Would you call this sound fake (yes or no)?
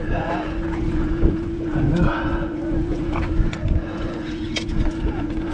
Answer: yes